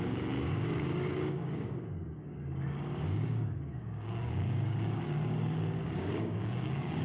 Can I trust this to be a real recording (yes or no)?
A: no